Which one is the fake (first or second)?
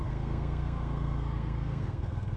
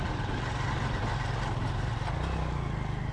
first